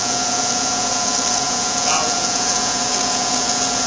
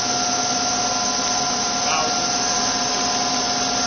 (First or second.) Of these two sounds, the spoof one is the first